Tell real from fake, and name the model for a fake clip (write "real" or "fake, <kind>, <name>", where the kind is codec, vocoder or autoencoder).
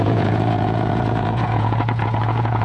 fake, vocoder, Vocos